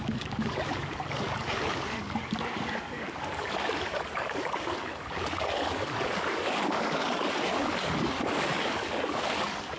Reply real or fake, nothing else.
fake